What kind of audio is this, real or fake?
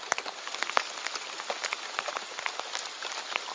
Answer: real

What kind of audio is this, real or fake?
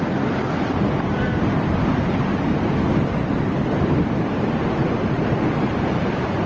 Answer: real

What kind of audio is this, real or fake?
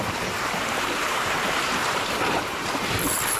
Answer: fake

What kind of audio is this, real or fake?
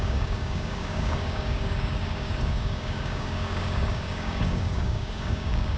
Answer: fake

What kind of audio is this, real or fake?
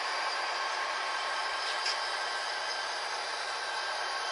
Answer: fake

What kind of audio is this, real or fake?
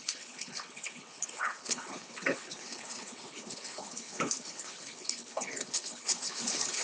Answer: fake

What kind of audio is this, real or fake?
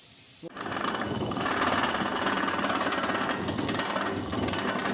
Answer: real